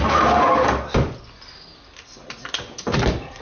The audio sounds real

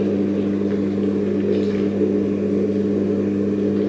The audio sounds real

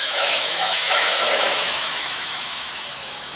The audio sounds fake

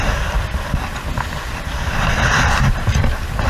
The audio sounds real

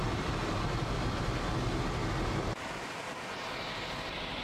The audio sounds real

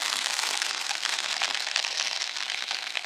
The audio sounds fake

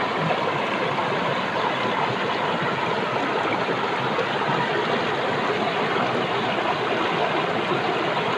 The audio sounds real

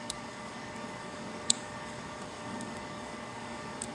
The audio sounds fake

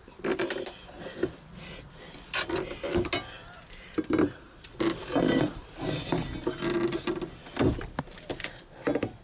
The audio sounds real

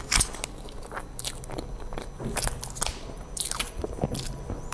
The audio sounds real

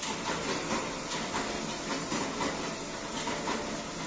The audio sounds real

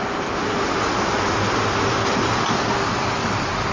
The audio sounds real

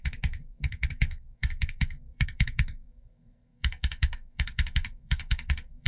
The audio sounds fake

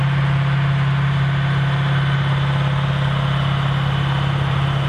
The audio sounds real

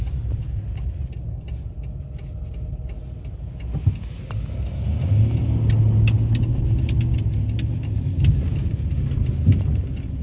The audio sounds real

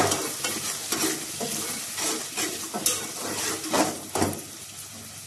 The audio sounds real